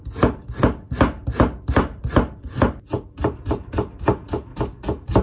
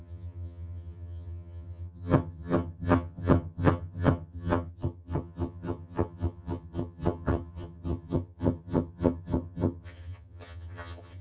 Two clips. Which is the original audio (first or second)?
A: first